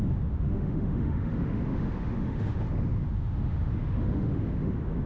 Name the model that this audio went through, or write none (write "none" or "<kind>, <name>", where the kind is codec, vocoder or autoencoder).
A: autoencoder, DAC-VAE